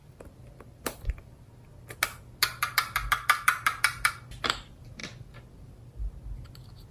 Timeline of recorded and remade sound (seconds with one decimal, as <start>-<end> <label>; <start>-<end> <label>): 0.0-6.9 recorded